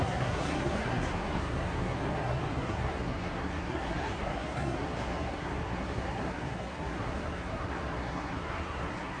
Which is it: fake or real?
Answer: fake